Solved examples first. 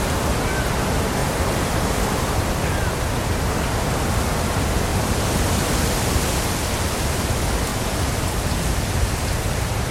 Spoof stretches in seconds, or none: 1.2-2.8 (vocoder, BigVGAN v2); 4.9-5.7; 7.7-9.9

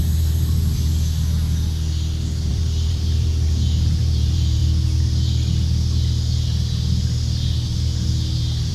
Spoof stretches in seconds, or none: 0.0-0.9 (vocoder, BigVGAN v2); 2.5-3.3; 4.0-4.6

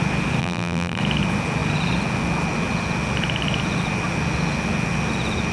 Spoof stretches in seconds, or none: 0.4-1.0 (vocoder, BigVGAN v2)

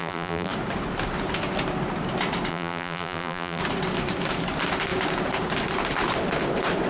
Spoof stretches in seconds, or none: 0.0-0.5 (vocoder, BigVGAN v2); 2.5-3.6

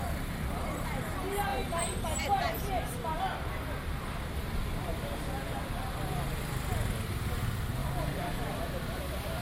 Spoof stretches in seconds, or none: 1.5-3.2 (vocoder, BigVGAN v2); 7.8-8.4

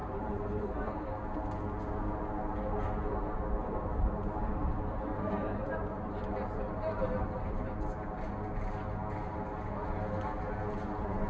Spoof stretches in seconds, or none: 0.0-1.1 (vocoder, BigVGAN v2); 3.6-7.7

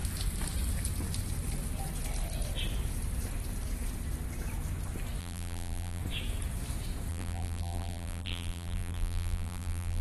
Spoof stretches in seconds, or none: 5.2-6.0 (vocoder, BigVGAN v2); 7.1-10.0